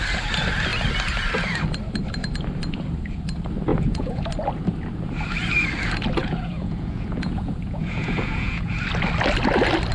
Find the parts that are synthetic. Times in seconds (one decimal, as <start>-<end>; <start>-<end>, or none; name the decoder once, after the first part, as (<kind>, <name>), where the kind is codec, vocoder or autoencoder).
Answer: 3.7-4.3 (vocoder, Vocos); 6.2-8.7